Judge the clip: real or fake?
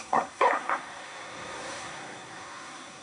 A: fake